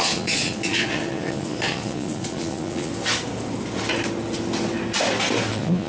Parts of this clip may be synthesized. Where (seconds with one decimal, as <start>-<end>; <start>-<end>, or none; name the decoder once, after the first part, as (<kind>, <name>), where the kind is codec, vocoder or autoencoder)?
0.0-2.9 (vocoder, Vocos); 5.5-5.9